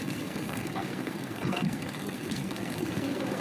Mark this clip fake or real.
fake